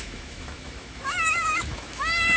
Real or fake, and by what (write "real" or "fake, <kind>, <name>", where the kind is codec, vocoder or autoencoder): fake, autoencoder, DAC-VAE